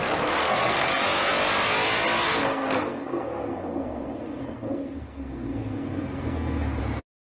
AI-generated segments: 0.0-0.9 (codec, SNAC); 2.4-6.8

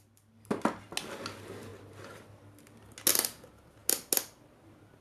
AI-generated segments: none

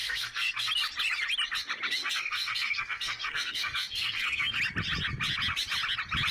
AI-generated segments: 0.0-0.7 (codec, SNAC); 2.0-4.6

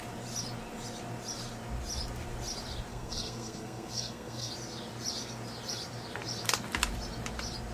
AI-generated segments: 2.9-4.5 (codec, SNAC)

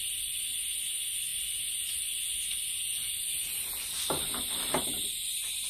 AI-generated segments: none

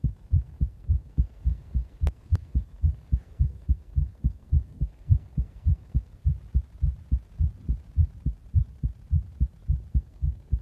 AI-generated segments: 0.0-6.2 (codec, SNAC); 9.9-10.6

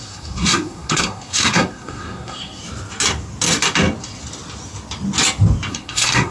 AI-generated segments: 0.0-2.6 (codec, SNAC); 5.7-6.3